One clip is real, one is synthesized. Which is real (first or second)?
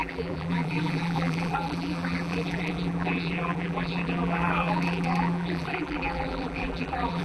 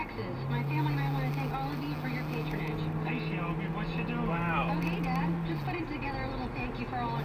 second